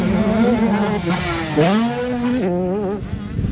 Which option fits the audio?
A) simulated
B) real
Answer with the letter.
B